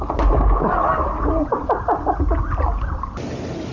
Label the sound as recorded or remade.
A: recorded